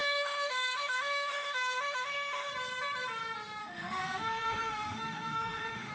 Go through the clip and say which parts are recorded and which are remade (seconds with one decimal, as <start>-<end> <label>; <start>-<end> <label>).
0.0-2.5 remade; 2.5-3.6 recorded; 3.6-5.9 remade